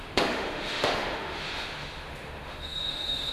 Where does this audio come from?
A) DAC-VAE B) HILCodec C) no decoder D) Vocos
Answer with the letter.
A